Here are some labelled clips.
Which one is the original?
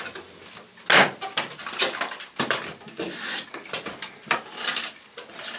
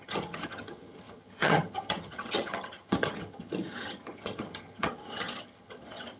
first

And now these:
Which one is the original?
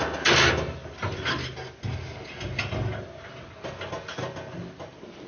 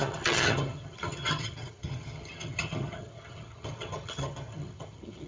first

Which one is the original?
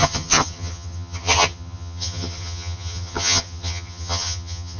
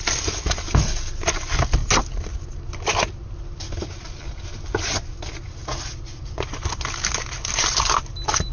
second